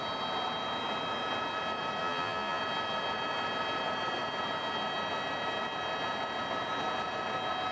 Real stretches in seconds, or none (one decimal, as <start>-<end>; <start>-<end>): 0.0-2.0; 2.6-7.7